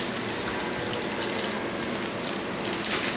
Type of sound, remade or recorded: recorded